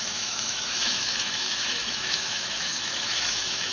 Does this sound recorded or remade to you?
remade